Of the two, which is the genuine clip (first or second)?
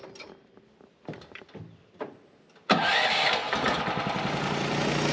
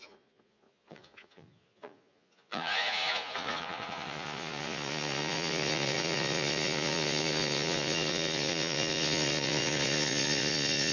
first